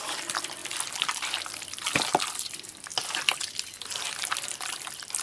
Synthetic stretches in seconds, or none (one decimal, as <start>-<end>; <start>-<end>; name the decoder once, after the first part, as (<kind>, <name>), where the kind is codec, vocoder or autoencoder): 0.0-2.9 (vocoder, BigVGAN v2)